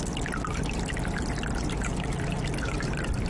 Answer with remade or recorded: recorded